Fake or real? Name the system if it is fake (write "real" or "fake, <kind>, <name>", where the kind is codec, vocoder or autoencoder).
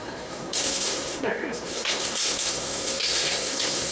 fake, codec, SNAC